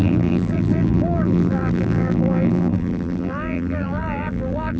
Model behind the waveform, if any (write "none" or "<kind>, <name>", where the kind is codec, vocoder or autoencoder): vocoder, BigVGAN v2